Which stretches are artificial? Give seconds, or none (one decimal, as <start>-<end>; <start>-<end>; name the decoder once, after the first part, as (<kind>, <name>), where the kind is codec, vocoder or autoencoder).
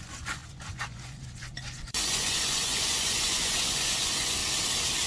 0.0-4.4 (vocoder, Vocos)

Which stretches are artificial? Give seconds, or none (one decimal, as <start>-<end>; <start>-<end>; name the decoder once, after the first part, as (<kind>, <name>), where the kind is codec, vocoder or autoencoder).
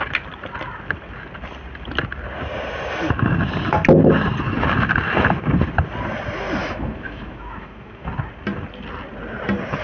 6.6-8.1 (autoencoder, DAC-VAE)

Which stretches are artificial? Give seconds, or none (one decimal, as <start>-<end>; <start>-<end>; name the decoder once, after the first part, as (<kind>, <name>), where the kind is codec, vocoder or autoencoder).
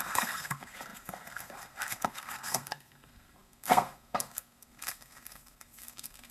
0.0-6.3 (codec, SNAC)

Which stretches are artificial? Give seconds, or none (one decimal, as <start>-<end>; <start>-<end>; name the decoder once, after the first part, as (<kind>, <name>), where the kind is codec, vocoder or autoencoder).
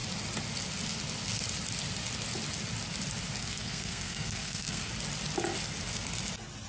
3.4-4.9 (codec, SNAC)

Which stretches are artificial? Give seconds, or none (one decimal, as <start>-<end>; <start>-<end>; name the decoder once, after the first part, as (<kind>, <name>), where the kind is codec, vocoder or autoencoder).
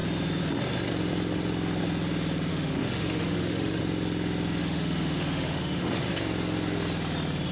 2.5-3.8 (autoencoder, DAC-VAE); 4.6-6.0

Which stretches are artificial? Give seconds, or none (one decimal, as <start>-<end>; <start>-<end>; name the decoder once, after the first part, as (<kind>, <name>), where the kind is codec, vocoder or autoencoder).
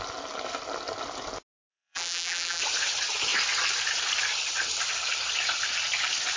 1.7-2.6 (vocoder, BigVGAN v2)